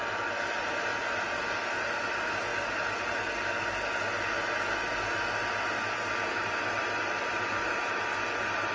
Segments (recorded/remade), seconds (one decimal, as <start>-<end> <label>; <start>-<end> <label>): 0.0-8.7 recorded